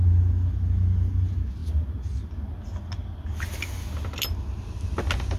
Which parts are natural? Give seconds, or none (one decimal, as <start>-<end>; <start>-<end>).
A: 0.0-5.4